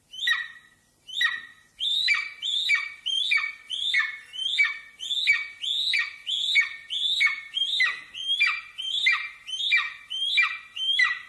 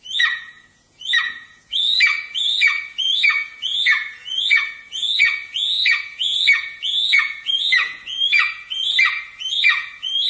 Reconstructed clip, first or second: second